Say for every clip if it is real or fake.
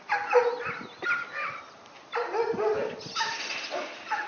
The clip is real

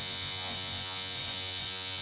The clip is fake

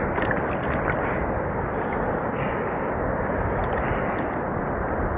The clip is real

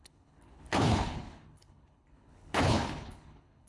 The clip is fake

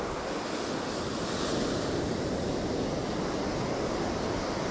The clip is real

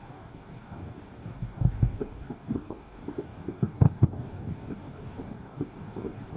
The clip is fake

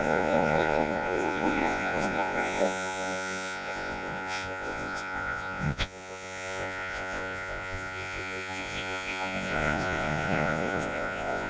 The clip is fake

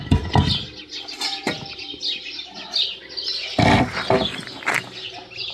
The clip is real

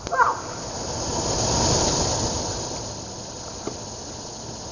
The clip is real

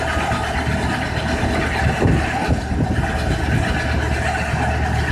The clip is real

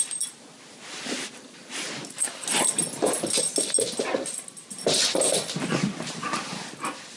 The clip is real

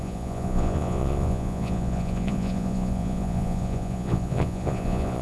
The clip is fake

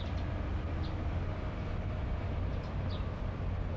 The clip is real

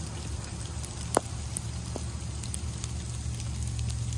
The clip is real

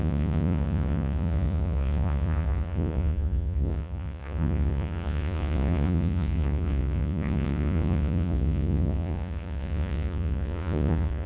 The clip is fake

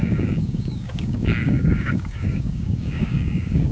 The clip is fake